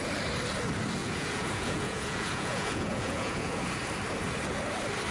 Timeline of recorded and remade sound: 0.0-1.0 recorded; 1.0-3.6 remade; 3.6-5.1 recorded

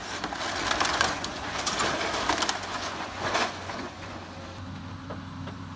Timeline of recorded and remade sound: 0.0-0.9 recorded; 0.9-1.6 remade; 1.6-2.7 recorded; 2.7-4.2 remade; 4.2-5.8 recorded